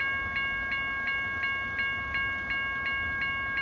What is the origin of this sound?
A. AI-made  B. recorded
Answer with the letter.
B